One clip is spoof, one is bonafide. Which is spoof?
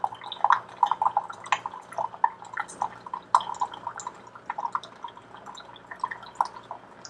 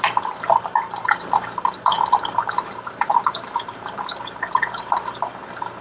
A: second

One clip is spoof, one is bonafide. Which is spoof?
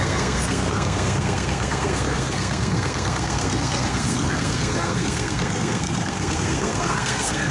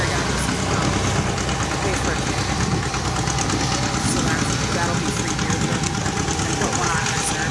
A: first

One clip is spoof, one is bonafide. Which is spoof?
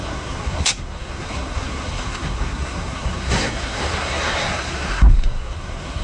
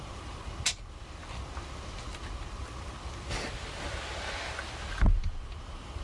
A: first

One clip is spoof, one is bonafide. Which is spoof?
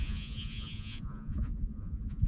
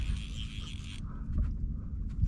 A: first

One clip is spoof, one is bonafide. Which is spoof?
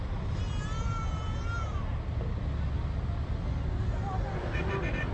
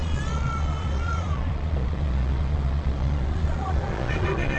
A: second